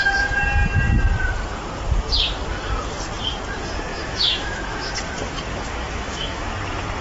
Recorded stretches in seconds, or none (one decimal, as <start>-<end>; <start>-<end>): 0.0-3.9; 4.9-5.5; 6.5-7.0